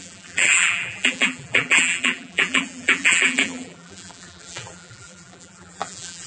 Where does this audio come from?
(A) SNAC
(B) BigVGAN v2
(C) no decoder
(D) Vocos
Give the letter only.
B